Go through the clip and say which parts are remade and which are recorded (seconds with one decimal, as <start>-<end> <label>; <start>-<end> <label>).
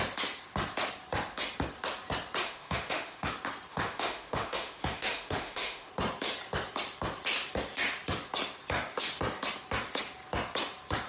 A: 0.0-2.4 recorded; 2.4-3.3 remade; 3.3-3.7 recorded; 3.7-5.9 remade; 5.9-11.1 recorded